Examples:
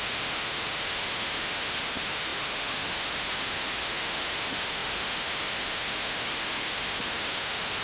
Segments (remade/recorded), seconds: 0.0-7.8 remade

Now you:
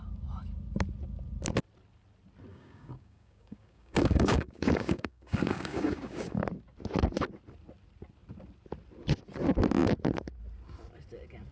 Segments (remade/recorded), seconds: 0.0-2.5 recorded; 2.5-6.4 remade; 6.4-11.5 recorded

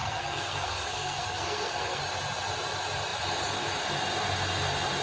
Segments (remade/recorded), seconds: 0.0-2.0 remade; 2.0-5.0 recorded

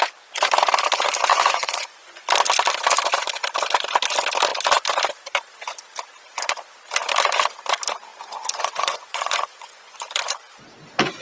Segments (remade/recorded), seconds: 0.0-1.3 recorded; 1.3-2.2 remade; 2.2-8.1 recorded; 8.1-10.0 remade; 10.0-11.2 recorded

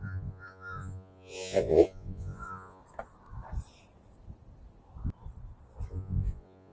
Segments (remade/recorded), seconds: 0.0-2.8 remade; 2.8-5.9 recorded; 5.9-6.7 remade

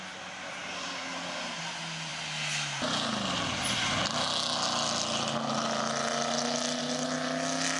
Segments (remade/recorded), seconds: 0.0-0.6 recorded; 0.6-1.6 remade; 1.6-7.8 recorded

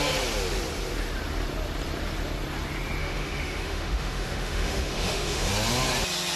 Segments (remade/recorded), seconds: 0.0-3.0 recorded; 3.0-5.5 remade; 5.5-6.4 recorded